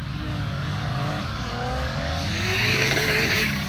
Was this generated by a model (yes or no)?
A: yes